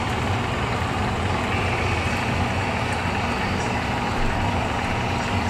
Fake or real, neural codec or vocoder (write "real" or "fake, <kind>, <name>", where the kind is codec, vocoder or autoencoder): real